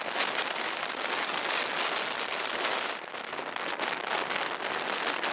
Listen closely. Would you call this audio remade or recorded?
recorded